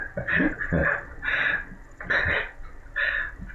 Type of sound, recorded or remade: recorded